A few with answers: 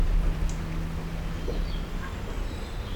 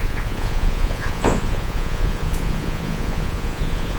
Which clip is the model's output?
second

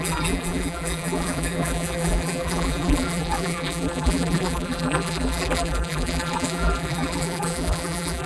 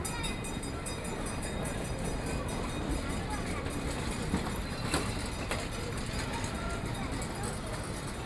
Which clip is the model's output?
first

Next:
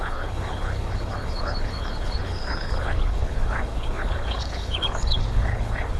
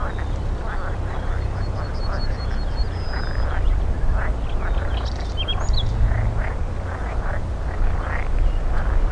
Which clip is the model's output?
first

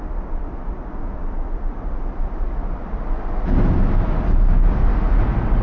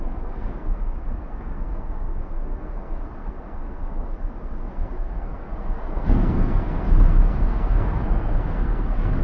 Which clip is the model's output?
second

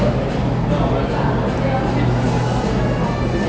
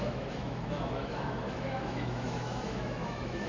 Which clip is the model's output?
second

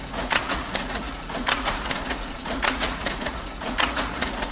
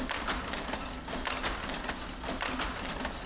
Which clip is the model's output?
first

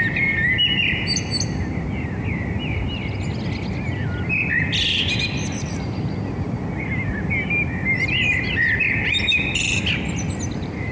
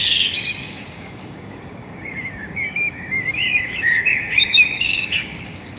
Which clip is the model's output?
second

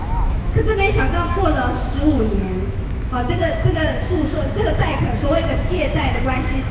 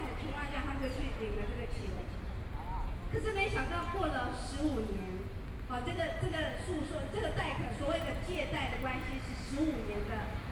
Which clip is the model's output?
first